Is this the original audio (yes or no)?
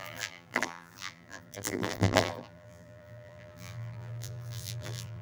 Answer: no